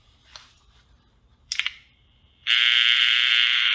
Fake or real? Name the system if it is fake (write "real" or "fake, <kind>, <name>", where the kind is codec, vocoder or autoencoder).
fake, vocoder, BigVGAN v2